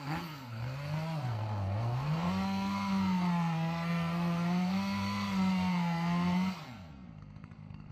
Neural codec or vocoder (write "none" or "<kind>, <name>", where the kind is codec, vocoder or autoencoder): codec, SNAC